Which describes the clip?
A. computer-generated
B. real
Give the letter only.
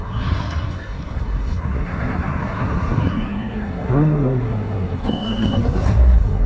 A